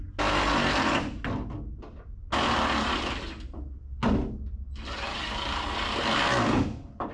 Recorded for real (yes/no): yes